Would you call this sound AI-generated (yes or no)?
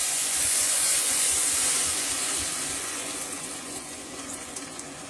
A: yes